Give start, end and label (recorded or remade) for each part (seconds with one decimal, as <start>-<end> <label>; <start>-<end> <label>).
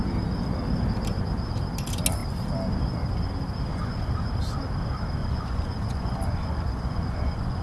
0.0-3.7 recorded; 3.7-4.3 remade; 4.3-5.2 recorded; 5.2-7.6 remade